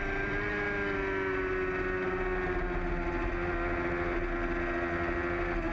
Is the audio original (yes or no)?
yes